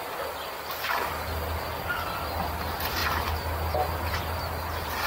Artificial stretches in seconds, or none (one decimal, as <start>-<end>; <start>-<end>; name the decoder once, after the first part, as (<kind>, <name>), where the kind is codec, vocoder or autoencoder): none

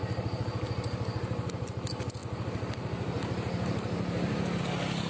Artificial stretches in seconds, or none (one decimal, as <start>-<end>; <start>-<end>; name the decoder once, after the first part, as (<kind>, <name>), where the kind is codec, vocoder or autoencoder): none

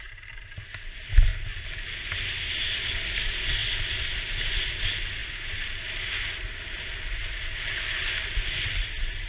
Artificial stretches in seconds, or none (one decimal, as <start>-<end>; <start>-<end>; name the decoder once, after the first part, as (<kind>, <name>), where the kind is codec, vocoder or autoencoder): none

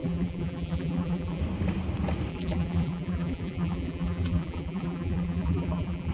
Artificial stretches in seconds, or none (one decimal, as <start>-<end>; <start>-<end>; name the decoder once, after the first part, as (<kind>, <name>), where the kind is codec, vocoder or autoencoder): 0.0-1.4 (vocoder, BigVGAN v2); 2.3-6.1

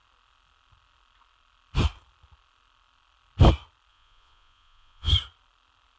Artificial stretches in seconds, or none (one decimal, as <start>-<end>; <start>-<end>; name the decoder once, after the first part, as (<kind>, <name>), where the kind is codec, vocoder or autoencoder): 3.9-5.1 (vocoder, Vocos)